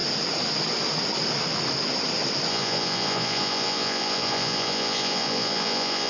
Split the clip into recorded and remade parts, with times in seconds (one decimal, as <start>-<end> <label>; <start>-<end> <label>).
0.0-2.5 recorded; 2.5-6.1 remade